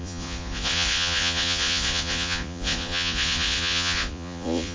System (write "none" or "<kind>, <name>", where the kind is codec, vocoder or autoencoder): vocoder, Vocos